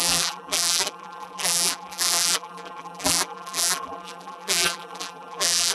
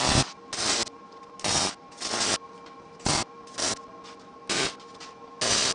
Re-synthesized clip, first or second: first